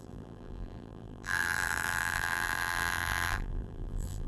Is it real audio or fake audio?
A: fake